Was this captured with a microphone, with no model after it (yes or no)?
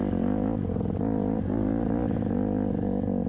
yes